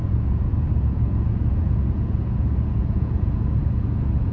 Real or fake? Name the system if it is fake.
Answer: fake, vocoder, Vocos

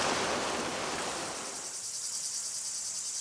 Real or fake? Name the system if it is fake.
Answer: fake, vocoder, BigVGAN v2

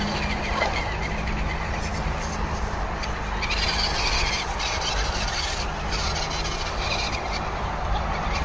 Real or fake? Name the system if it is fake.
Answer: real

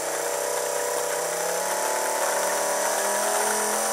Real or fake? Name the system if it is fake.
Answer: real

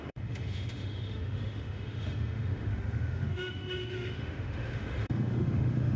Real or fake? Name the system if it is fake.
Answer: fake, autoencoder, DAC-VAE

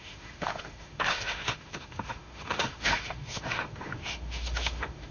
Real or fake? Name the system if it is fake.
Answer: fake, autoencoder, DAC-VAE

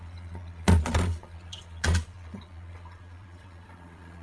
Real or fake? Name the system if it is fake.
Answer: fake, vocoder, Vocos